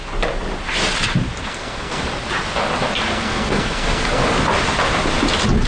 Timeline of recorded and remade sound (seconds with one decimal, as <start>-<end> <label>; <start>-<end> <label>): 0.0-1.4 recorded; 1.4-2.0 remade; 2.0-3.1 recorded; 3.1-4.2 remade; 4.2-5.7 recorded